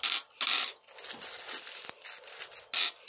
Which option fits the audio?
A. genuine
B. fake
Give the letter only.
A